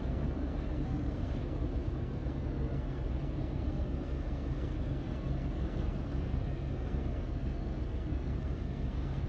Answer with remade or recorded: remade